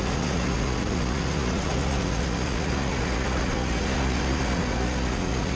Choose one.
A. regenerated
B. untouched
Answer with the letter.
A